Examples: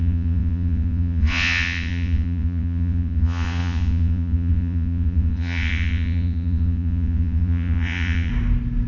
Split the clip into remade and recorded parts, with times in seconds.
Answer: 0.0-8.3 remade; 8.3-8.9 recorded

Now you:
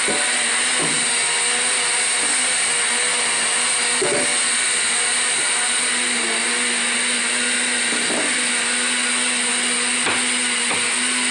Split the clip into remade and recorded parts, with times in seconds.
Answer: 0.0-11.3 recorded

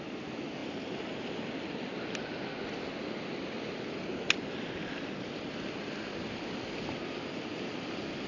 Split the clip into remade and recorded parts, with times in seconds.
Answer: 0.0-8.3 recorded

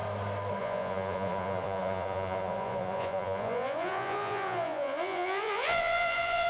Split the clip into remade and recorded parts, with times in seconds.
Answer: 0.0-0.6 recorded; 0.6-6.5 remade